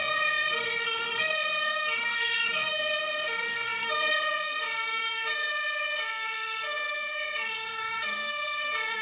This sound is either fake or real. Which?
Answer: fake